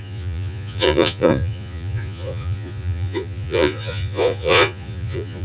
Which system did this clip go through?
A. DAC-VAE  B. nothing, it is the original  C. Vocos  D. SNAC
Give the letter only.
C